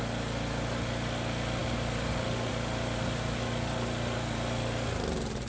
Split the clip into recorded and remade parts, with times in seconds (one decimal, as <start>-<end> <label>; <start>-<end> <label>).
0.0-5.5 recorded